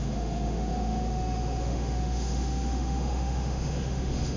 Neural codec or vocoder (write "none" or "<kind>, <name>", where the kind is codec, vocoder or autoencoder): autoencoder, DAC-VAE